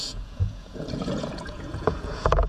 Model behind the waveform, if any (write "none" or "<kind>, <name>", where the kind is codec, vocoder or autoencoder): vocoder, Vocos